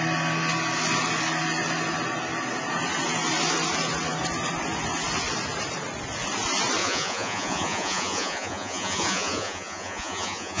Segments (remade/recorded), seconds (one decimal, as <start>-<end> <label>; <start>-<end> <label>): 0.0-6.8 recorded; 6.8-10.6 remade